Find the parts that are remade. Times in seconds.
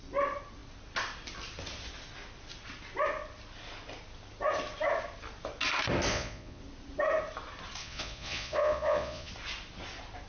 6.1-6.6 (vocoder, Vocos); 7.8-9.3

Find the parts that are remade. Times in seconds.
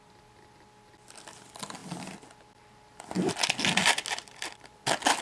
none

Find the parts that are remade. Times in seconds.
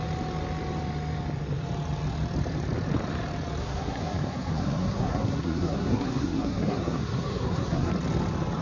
3.6-7.9 (codec, SNAC)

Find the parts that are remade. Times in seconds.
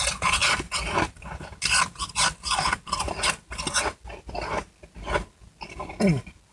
none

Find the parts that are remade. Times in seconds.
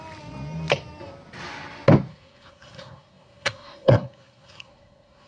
2.1-5.3 (codec, SNAC)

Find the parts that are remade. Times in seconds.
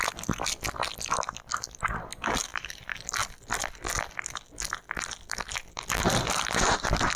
2.5-3.1 (vocoder, BigVGAN v2)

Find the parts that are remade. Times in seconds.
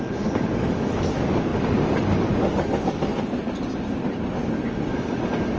0.0-3.1 (codec, DAC); 4.9-5.6